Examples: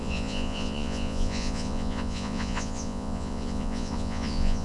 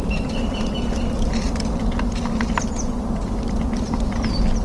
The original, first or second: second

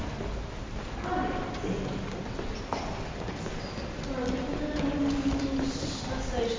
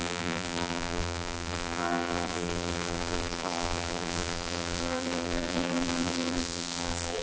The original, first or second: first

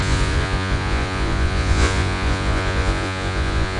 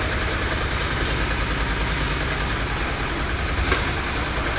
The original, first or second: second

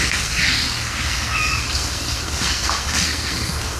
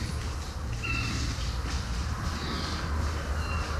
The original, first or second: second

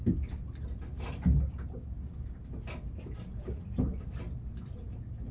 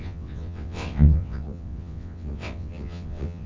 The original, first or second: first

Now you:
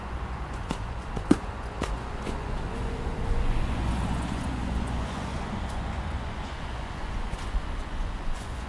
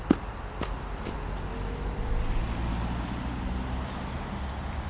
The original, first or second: second